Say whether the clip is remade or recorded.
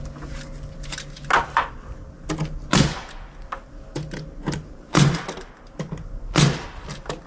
recorded